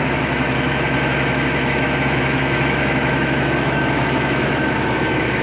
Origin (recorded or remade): remade